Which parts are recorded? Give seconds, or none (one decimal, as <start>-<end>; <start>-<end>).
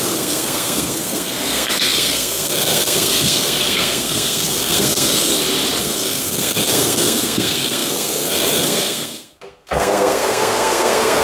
5.3-5.8